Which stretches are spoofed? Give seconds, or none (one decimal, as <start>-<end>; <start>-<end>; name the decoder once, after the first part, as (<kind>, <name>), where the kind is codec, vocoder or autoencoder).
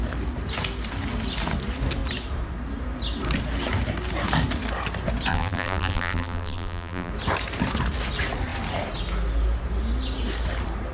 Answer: 5.3-7.1 (vocoder, BigVGAN v2)